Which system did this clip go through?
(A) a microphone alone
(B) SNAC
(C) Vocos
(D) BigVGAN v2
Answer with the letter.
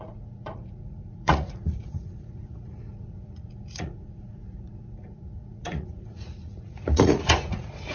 C